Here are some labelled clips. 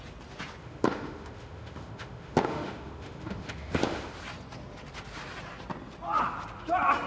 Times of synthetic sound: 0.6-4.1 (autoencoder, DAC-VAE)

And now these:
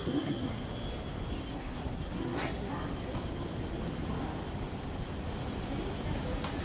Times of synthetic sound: 0.0-0.6 (codec, SNAC); 1.5-2.7